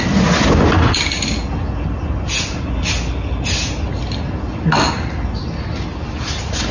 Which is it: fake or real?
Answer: real